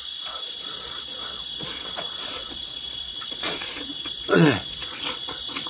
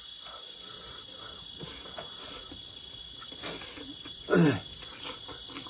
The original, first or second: second